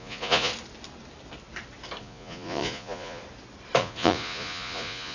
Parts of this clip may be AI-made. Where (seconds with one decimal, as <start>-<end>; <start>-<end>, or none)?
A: 0.0-0.5; 2.0-3.2; 3.8-5.1